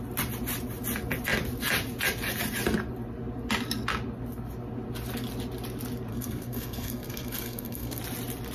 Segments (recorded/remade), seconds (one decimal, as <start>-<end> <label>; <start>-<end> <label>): 0.0-6.1 recorded; 6.1-8.0 remade; 8.0-8.5 recorded